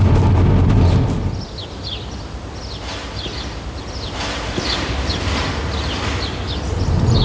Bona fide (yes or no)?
yes